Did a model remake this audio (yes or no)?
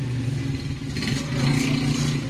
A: no